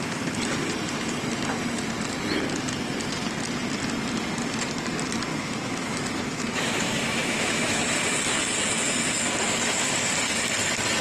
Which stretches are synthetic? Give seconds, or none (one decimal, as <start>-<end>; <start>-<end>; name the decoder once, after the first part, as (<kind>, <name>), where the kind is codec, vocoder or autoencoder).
5.3-8.1 (autoencoder, DAC-VAE)